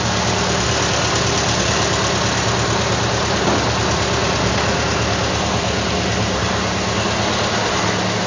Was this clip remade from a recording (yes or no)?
no